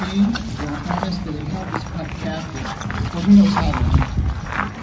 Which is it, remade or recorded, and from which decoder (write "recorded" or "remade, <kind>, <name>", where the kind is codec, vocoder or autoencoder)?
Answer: recorded